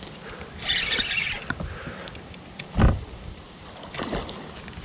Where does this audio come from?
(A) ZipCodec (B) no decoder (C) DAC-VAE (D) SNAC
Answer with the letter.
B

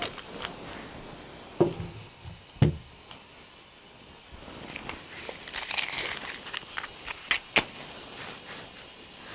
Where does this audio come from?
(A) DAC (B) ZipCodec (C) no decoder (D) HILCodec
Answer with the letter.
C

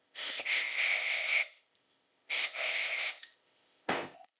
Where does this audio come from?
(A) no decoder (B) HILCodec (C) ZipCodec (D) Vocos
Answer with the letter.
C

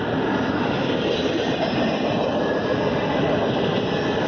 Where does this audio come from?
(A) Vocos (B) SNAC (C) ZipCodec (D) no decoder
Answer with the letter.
D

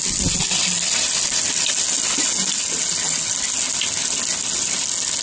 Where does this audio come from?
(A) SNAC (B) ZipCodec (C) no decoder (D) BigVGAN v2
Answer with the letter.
C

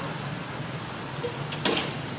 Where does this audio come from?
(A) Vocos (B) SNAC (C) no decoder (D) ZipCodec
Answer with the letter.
C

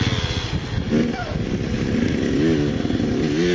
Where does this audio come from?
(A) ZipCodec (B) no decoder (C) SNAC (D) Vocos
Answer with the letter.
B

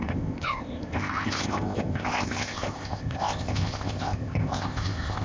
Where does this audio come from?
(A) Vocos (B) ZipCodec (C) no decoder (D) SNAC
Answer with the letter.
B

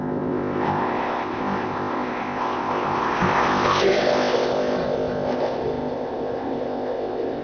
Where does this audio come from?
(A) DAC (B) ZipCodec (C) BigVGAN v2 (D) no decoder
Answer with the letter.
B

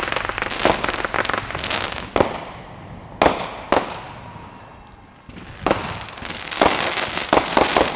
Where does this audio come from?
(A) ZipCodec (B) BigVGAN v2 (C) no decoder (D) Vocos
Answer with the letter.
C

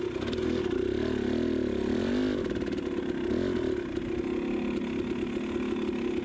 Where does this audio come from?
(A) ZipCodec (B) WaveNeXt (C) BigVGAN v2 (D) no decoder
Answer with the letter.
D